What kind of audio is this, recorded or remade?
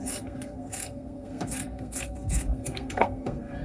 remade